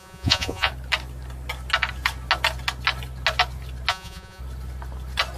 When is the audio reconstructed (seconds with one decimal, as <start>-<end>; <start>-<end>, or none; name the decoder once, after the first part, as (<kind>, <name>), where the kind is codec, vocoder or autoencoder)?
0.0-0.7 (vocoder, Vocos); 3.9-4.4